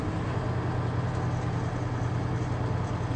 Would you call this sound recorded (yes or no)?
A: yes